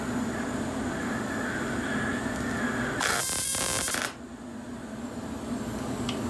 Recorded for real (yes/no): yes